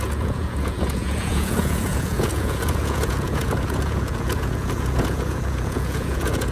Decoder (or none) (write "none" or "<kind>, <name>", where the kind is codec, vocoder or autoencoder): vocoder, Vocos